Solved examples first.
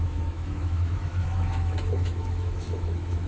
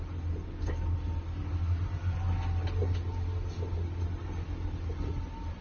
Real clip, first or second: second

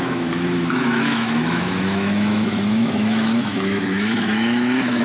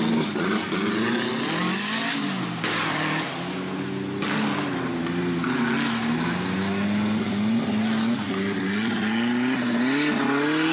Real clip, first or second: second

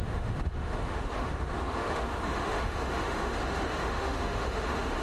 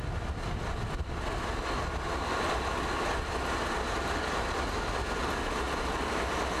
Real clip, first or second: second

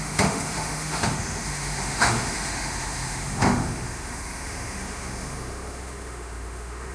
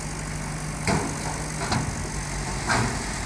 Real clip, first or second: second